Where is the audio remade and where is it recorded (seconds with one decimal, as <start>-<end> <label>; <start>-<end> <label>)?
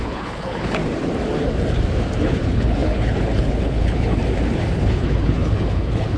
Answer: 0.0-0.8 remade; 0.8-2.2 recorded; 2.2-4.2 remade; 4.2-4.8 recorded; 4.8-6.2 remade